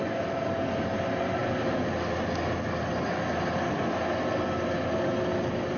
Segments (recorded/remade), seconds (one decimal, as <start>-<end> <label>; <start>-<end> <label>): 0.0-5.8 recorded